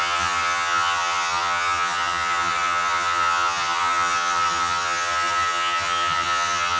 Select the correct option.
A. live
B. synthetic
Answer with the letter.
B